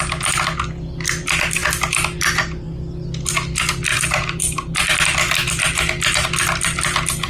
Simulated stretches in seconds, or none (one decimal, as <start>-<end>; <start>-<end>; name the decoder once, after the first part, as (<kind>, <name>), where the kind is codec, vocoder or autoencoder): 3.9-5.2 (vocoder, BigVGAN v2)